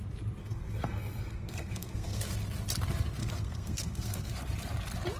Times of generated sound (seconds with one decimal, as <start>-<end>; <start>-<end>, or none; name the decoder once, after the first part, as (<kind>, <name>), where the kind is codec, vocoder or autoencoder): 0.4-2.2 (codec, SNAC); 3.2-4.3